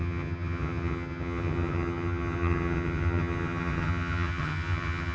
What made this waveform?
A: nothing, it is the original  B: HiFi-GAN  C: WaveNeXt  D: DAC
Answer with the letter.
B